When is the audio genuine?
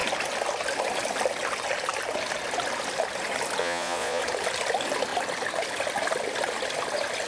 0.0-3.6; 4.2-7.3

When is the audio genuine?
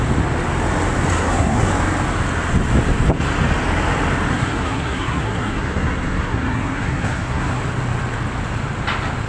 0.0-1.1; 1.7-4.3; 7.6-9.3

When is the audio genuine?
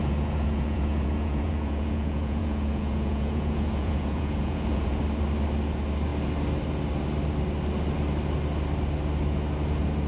5.0-10.1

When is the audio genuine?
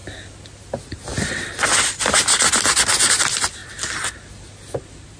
0.0-5.2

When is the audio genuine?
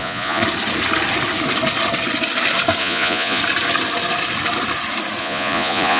0.4-2.8; 3.4-5.2